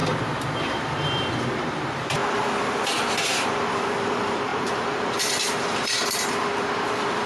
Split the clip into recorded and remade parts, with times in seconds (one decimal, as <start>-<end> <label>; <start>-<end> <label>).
0.0-0.6 recorded; 0.6-2.2 remade; 2.2-3.2 recorded; 3.2-7.3 remade

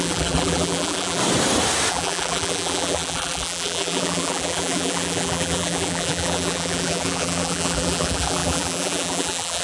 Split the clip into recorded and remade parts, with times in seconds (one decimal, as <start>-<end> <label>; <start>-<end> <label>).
0.0-1.2 remade; 1.2-1.9 recorded; 1.9-9.6 remade

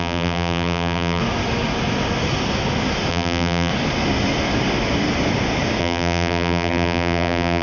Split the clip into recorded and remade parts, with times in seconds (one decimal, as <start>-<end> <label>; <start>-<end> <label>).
0.0-1.2 remade; 1.2-3.1 recorded; 3.1-3.7 remade; 3.7-5.8 recorded; 5.8-7.6 remade

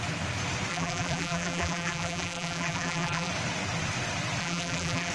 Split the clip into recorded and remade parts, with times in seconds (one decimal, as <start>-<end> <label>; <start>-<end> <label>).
0.0-0.7 recorded; 0.7-3.3 remade; 3.3-4.4 recorded; 4.4-5.1 remade

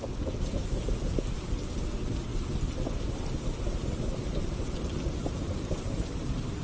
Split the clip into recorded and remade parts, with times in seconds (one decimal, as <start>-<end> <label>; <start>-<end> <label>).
0.0-6.6 recorded

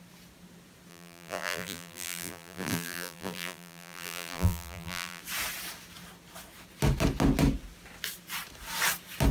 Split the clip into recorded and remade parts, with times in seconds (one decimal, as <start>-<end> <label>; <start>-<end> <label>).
0.0-0.9 recorded; 0.9-5.2 remade; 5.2-9.3 recorded

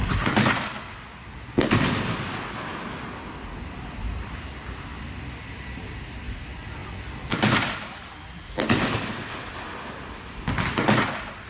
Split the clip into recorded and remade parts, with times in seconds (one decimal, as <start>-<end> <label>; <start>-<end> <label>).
0.0-11.5 recorded

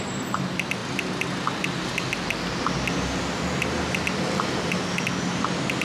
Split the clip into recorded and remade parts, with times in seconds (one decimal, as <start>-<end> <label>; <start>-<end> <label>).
0.0-5.8 recorded